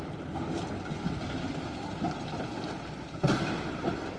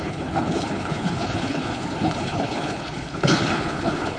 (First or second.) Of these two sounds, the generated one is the second